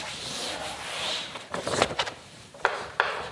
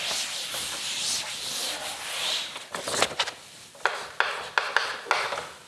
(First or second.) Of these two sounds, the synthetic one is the first